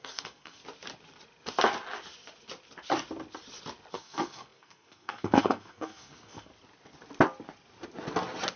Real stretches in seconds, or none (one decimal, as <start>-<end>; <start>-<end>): 0.6-3.9; 6.5-8.6

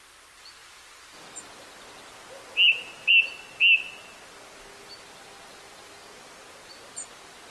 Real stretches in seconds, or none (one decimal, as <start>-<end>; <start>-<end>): 0.0-7.5

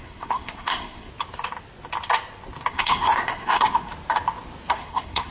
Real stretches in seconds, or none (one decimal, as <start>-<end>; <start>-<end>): 1.1-2.7; 3.9-4.7

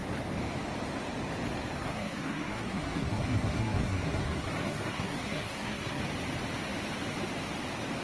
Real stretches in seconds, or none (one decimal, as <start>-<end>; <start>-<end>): 0.0-1.8; 6.0-8.0

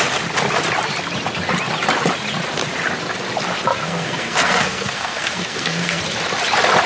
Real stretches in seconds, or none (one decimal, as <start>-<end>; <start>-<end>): 0.0-3.8; 6.0-6.9